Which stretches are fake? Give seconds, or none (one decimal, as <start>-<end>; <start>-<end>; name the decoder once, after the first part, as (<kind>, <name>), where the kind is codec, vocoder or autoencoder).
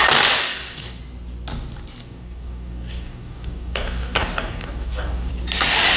0.4-1.0 (codec, DAC); 2.0-5.3